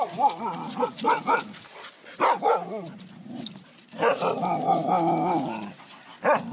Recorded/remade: recorded